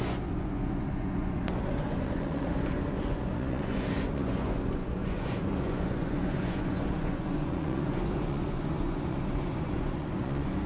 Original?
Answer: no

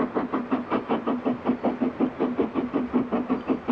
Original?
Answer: yes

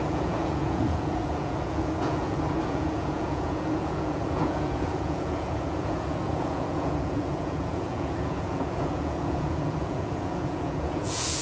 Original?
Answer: no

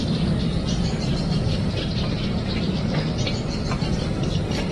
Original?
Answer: yes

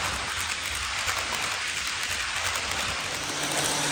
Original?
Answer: yes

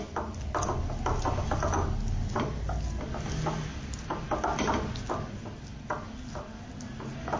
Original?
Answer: yes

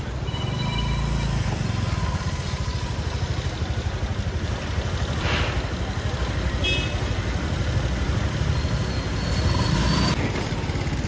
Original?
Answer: yes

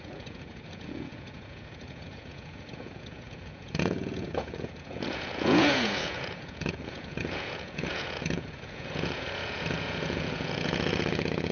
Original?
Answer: no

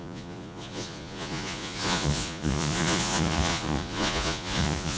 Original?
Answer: no